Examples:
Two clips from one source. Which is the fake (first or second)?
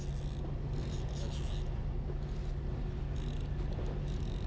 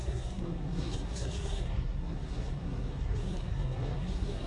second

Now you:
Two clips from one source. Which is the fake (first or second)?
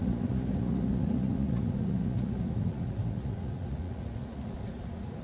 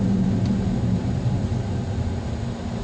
first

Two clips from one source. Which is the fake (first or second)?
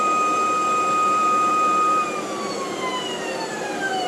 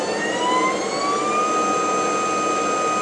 first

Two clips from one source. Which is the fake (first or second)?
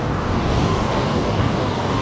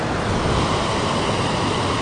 first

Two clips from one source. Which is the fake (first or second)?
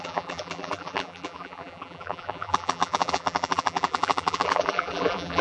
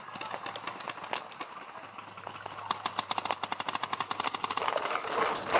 first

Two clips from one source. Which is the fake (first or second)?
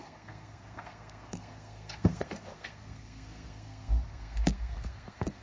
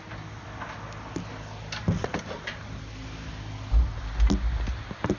first